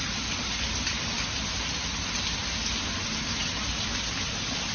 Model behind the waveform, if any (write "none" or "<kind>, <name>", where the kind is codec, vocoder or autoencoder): vocoder, BigVGAN v2